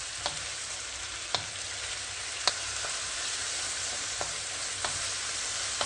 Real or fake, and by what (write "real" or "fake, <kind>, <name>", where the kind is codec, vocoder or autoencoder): real